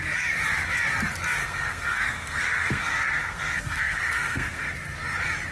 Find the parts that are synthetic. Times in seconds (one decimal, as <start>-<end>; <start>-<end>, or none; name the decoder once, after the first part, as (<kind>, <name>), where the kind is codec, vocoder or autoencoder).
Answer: 1.4-4.7 (codec, SNAC)